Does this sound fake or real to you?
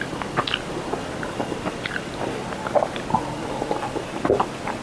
real